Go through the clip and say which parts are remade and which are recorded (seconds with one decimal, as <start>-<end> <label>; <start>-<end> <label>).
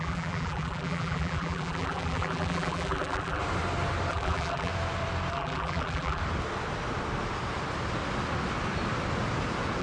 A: 0.0-3.4 remade; 3.4-4.1 recorded; 4.1-4.7 remade; 4.7-5.3 recorded; 5.3-6.2 remade; 6.2-9.8 recorded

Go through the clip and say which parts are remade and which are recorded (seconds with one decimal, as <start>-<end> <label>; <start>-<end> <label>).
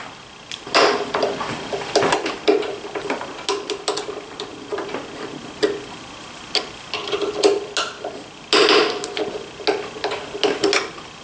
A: 0.0-11.2 recorded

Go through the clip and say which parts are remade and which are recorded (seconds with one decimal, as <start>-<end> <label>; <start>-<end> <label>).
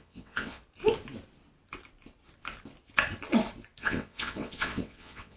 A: 0.0-0.6 remade; 0.6-3.8 recorded; 3.8-5.4 remade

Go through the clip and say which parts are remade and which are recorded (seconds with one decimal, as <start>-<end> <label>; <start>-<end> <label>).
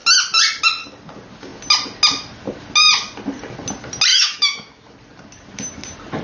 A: 0.0-4.1 recorded; 4.1-4.9 remade; 4.9-6.2 recorded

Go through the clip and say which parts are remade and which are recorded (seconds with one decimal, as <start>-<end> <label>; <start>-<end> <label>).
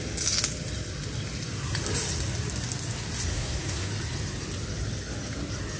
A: 0.0-3.3 recorded; 3.3-3.9 remade; 3.9-5.8 recorded